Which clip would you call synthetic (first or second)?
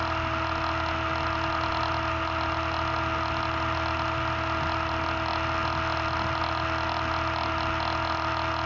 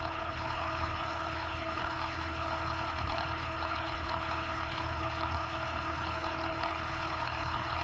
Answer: second